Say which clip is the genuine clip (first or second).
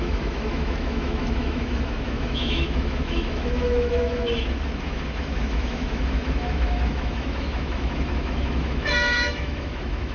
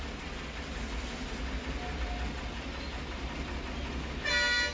second